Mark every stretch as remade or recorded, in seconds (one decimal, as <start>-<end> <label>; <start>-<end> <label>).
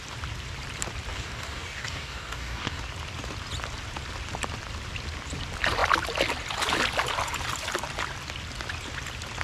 0.0-1.1 recorded; 1.1-2.8 remade; 2.8-9.4 recorded